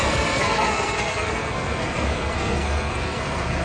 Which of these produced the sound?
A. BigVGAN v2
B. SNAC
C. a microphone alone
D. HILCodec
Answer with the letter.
B